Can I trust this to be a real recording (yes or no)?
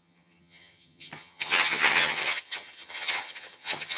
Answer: no